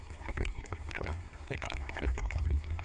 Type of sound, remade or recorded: remade